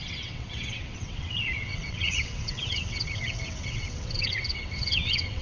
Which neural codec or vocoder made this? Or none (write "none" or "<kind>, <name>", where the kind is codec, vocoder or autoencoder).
vocoder, WaveNeXt